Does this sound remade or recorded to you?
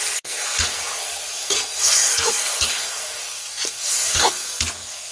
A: remade